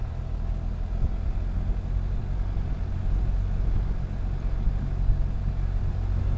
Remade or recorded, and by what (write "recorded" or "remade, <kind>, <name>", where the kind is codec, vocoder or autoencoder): recorded